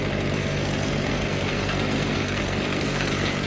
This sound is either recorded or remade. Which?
remade